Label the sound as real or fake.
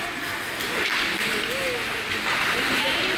real